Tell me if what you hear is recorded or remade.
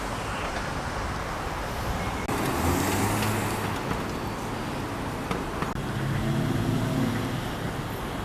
recorded